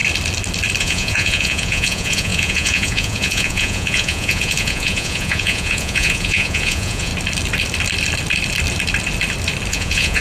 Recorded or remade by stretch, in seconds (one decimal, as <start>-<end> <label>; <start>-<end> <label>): 0.0-0.8 recorded; 0.8-7.1 remade; 7.1-9.7 recorded; 9.7-10.2 remade